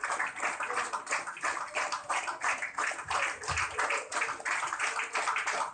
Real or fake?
real